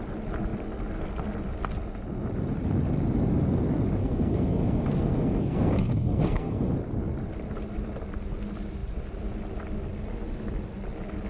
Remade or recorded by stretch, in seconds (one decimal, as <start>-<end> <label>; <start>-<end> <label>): 0.0-4.0 recorded; 4.0-6.7 remade; 6.7-11.3 recorded